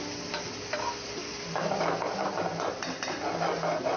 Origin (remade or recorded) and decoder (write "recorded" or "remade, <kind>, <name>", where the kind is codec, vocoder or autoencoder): recorded